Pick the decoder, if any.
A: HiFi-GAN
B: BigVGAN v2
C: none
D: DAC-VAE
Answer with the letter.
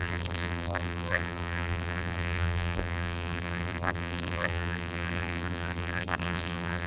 B